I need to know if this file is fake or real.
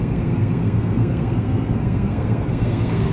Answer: fake